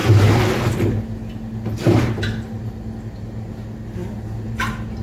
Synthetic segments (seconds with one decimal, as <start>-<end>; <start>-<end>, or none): none